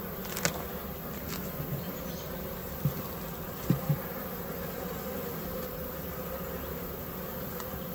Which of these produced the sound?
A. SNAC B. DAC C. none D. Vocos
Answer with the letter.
C